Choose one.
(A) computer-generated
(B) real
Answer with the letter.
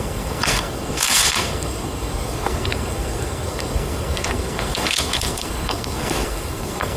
A